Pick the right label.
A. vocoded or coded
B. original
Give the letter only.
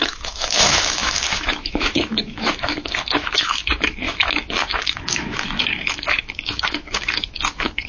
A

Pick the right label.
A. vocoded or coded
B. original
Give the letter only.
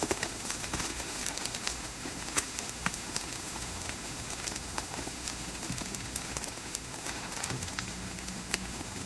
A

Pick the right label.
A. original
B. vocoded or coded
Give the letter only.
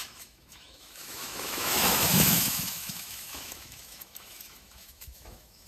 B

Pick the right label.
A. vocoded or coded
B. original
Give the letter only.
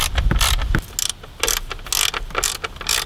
B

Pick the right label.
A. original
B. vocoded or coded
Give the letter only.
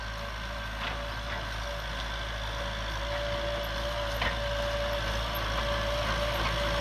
A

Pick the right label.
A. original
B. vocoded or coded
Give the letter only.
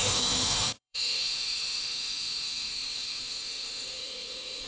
B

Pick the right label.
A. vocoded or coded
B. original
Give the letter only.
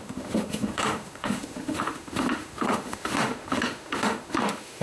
A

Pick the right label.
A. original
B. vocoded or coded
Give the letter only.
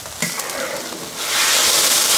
A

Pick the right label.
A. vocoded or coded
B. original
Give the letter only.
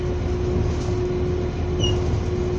B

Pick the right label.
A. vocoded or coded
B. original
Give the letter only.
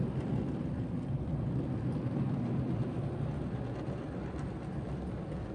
B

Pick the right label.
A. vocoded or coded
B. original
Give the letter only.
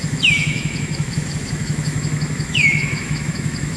A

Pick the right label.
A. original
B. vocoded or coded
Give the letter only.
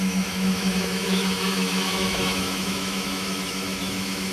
B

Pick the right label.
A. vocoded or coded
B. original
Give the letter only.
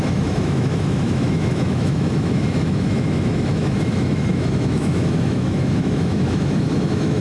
A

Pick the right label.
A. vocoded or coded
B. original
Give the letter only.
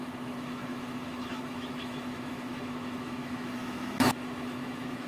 A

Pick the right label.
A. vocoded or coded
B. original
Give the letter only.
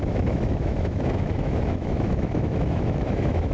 A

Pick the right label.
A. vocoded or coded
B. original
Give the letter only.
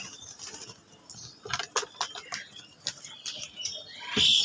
B